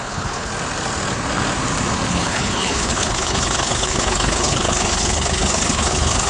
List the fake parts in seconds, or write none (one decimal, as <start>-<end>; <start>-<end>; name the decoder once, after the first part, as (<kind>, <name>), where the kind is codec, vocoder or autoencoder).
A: 0.0-0.5 (codec, HILCodec); 2.1-6.3